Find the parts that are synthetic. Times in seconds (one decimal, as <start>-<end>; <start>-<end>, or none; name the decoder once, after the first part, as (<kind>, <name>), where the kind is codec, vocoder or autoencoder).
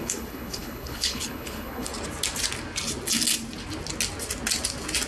0.0-1.9 (codec, HILCodec)